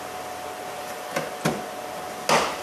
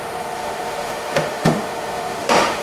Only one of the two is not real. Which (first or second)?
second